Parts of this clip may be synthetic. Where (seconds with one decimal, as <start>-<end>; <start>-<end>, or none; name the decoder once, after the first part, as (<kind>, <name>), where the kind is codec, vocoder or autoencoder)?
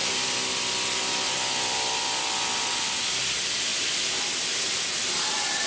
none